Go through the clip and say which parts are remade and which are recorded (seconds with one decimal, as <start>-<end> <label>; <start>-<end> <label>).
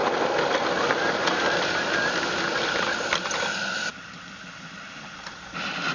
0.0-5.9 recorded